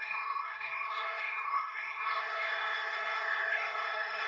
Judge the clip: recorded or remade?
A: remade